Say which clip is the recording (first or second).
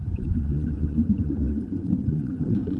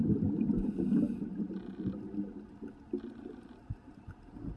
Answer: second